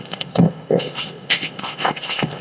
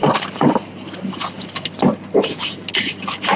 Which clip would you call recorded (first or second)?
second